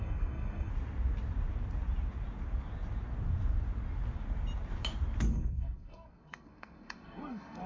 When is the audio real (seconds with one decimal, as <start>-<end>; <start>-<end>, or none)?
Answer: 0.7-5.3